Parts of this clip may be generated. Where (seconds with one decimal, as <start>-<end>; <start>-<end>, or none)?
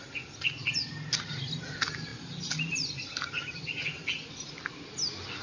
none